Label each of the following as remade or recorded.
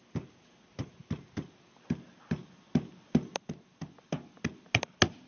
recorded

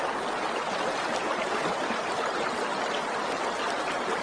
recorded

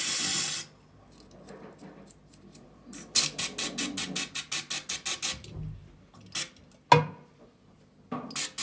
recorded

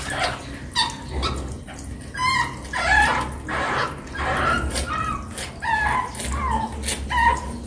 recorded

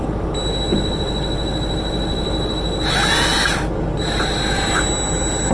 recorded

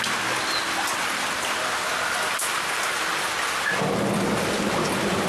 recorded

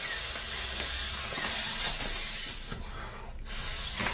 recorded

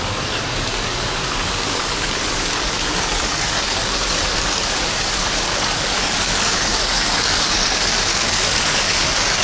remade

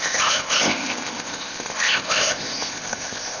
remade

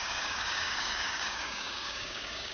remade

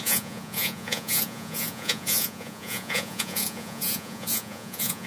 remade